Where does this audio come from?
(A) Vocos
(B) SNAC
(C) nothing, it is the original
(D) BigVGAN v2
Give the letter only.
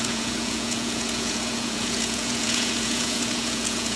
A